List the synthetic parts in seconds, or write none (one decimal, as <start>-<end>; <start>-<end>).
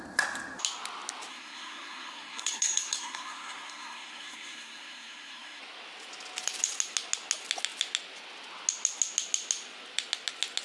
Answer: 1.3-5.6